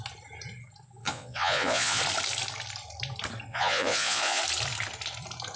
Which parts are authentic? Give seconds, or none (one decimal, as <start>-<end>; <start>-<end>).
0.0-1.0; 2.0-3.5; 4.4-5.6